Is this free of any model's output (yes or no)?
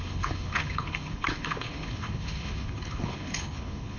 no